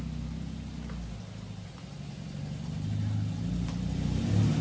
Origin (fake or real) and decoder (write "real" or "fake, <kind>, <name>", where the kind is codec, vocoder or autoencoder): real